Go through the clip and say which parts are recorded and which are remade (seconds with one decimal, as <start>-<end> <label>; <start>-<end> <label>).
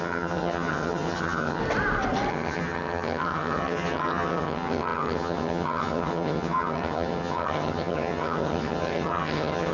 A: 0.0-1.6 remade; 1.6-2.3 recorded; 2.3-9.7 remade